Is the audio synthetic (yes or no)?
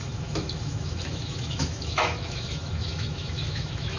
yes